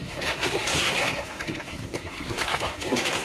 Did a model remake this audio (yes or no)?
yes